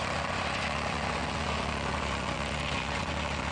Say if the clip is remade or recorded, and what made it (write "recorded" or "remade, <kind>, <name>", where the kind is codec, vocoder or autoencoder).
remade, vocoder, Vocos